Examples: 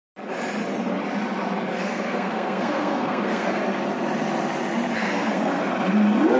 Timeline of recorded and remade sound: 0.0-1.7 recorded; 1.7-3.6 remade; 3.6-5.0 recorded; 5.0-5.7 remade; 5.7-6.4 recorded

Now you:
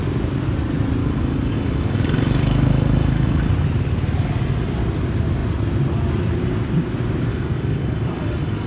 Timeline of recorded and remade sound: 0.0-1.0 recorded; 1.0-3.5 remade; 3.5-7.3 recorded; 7.3-8.7 remade

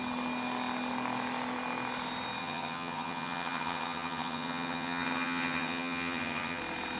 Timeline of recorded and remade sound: 0.0-2.4 recorded; 2.4-6.6 remade; 6.6-7.0 recorded

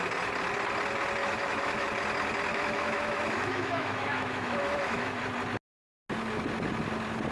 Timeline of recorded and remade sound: 0.0-1.2 recorded; 1.2-1.9 remade; 1.9-2.5 recorded; 2.5-5.2 remade; 5.2-7.3 recorded

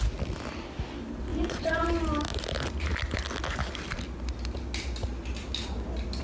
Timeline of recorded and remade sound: 0.0-1.3 recorded; 1.3-1.9 remade; 1.9-6.2 recorded

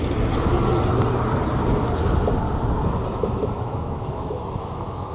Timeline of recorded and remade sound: 0.0-3.1 recorded; 3.1-5.1 remade

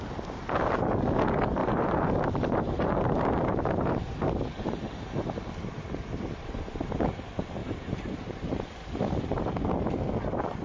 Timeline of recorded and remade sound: 0.0-1.6 recorded; 1.6-6.7 remade; 6.7-7.6 recorded; 7.6-9.2 remade; 9.2-10.6 recorded